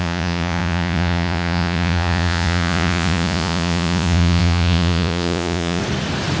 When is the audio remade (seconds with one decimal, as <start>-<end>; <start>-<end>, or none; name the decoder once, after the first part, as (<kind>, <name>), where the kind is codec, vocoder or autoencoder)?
0.0-5.8 (vocoder, Vocos)